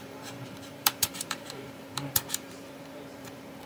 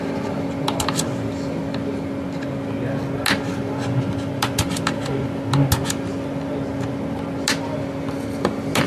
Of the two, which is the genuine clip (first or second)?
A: second